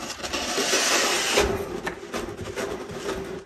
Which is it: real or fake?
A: real